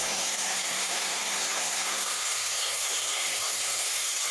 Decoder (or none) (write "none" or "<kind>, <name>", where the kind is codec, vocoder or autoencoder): codec, SNAC